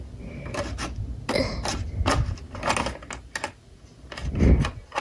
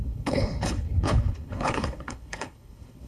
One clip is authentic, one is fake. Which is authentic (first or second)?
first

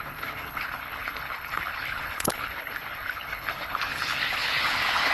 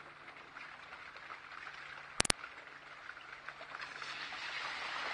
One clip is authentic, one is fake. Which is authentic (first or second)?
second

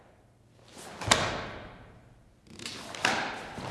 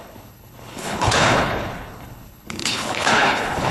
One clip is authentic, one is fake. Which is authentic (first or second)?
first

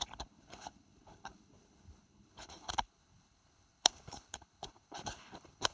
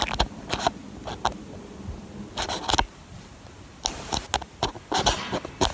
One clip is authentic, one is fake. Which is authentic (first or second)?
second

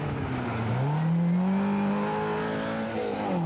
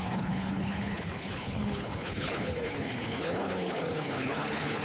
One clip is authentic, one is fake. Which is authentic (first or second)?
first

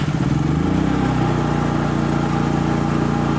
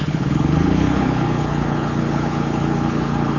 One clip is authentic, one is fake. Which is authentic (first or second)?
first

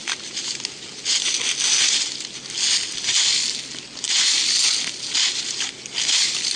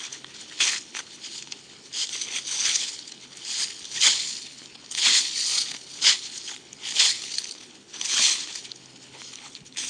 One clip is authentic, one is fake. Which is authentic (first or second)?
first